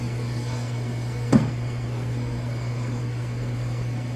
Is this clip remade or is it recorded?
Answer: remade